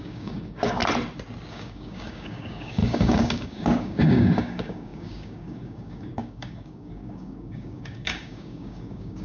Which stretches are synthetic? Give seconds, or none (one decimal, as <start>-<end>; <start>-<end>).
0.0-0.8; 1.5-9.2